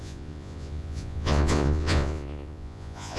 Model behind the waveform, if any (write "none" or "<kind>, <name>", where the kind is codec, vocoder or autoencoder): vocoder, Vocos